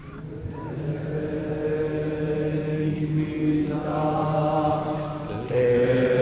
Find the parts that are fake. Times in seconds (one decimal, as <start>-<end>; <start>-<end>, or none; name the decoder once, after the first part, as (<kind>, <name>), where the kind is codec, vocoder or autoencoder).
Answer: none

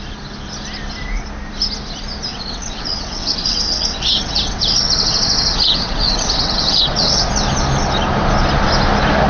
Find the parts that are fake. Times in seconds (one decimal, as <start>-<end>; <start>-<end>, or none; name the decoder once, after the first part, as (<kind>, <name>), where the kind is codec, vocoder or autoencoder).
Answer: 2.3-7.2 (vocoder, WaveNeXt)